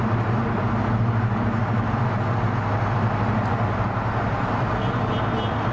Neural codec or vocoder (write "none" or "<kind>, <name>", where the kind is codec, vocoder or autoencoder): none